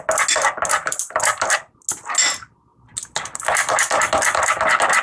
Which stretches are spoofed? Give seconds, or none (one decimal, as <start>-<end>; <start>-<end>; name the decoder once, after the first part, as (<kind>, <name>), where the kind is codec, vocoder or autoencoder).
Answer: none